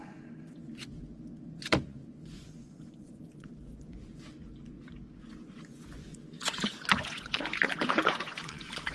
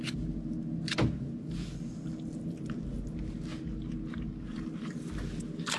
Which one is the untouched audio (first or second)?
second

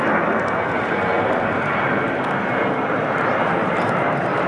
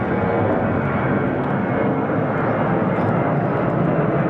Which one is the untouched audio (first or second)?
second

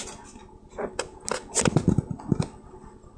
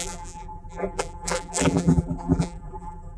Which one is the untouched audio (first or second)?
first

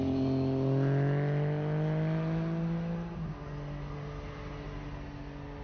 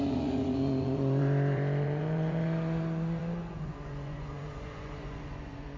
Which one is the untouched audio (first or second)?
first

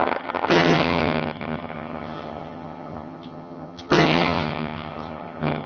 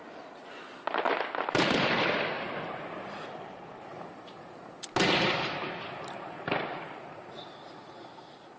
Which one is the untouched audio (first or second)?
second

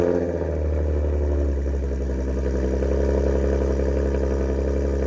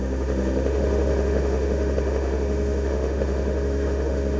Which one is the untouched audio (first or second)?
first